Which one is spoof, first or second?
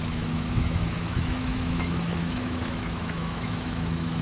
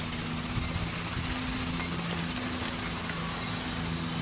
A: first